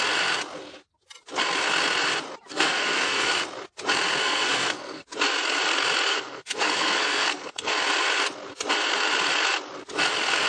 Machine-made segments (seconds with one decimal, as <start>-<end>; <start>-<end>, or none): 2.5-3.3; 4.2-5.1; 6.1-7.7